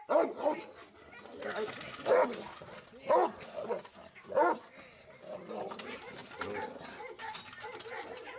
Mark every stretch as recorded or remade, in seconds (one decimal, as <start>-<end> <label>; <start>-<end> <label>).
0.0-8.4 recorded